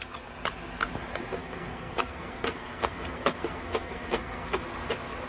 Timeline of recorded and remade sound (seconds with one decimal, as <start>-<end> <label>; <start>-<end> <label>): 0.0-1.4 recorded; 1.4-4.6 remade; 4.6-5.3 recorded